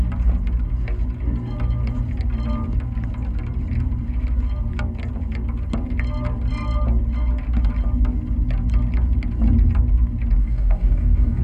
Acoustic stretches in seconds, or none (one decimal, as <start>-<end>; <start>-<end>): 0.0-10.4